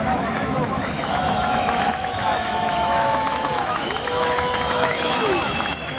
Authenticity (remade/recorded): remade